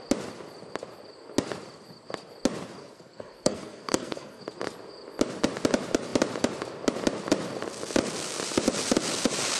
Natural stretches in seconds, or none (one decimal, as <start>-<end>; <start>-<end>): 0.0-2.8; 4.4-9.6

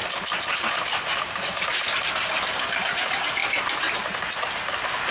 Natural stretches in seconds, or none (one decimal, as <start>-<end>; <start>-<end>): 0.0-0.5; 1.7-2.3

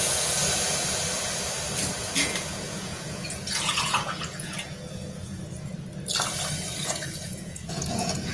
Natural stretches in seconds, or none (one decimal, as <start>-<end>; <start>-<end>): 0.4-2.0; 5.7-6.8

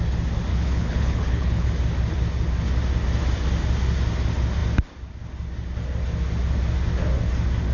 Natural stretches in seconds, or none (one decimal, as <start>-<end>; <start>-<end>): 0.0-0.5; 1.7-7.7